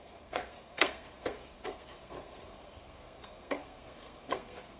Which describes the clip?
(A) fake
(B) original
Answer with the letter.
A